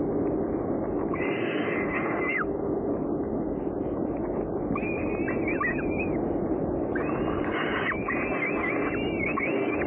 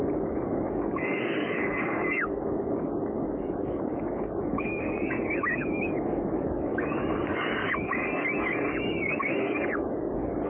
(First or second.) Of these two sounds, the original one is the first